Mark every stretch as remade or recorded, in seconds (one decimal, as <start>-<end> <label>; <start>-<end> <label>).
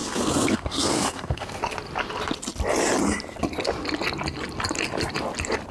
0.0-1.6 remade; 1.6-5.7 recorded